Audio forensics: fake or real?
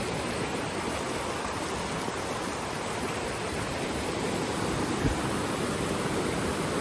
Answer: real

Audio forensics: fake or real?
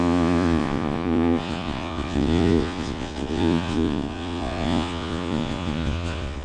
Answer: fake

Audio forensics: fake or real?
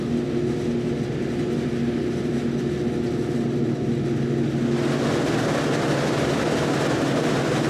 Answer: real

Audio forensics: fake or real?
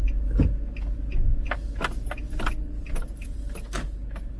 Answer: real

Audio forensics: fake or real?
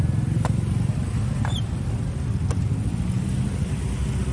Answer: real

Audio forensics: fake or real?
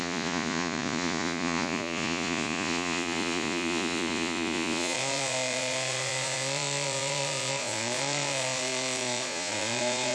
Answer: fake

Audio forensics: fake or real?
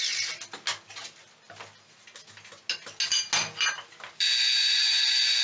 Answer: real